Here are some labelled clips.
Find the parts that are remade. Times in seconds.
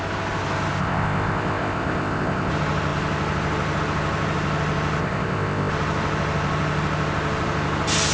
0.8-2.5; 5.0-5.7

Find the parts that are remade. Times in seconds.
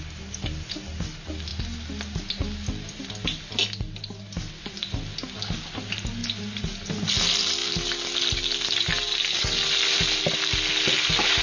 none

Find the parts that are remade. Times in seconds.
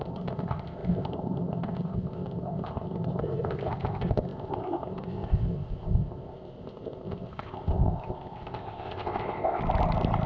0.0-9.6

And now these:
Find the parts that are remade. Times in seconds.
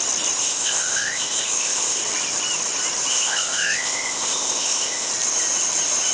0.4-2.0; 3.1-5.1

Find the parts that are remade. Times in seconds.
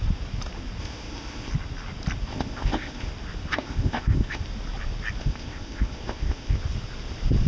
0.8-1.5; 2.3-3.1; 3.5-4.4; 5.2-6.6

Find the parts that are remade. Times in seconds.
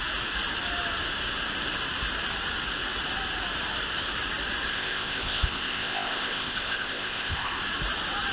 4.7-7.6